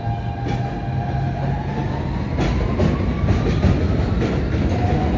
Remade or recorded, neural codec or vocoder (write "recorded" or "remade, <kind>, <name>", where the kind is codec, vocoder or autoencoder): recorded